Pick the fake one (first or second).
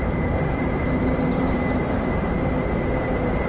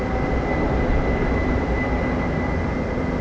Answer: first